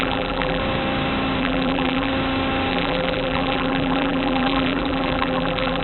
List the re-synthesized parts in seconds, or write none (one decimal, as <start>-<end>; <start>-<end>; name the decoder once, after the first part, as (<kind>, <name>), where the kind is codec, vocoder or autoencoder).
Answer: 0.0-0.6 (vocoder, BigVGAN v2); 1.4-2.1; 2.7-5.8